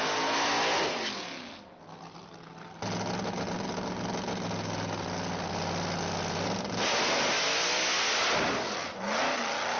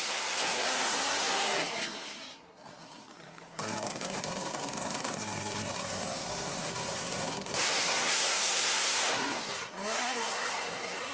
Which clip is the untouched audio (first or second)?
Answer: first